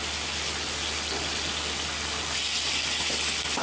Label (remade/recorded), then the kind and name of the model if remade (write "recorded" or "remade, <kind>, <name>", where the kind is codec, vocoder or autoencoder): recorded